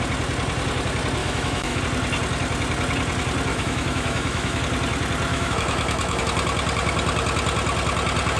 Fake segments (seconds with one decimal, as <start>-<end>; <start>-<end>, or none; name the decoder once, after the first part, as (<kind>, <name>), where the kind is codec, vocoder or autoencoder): 1.2-1.8 (autoencoder, DAC-VAE); 3.5-4.6; 5.3-6.2